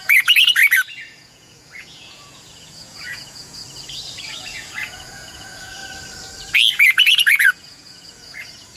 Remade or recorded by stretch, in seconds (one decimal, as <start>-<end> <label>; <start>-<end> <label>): 0.0-0.6 remade; 0.6-1.1 recorded; 1.1-3.6 remade; 3.6-4.3 recorded; 4.3-5.8 remade; 5.8-6.8 recorded; 6.8-8.8 remade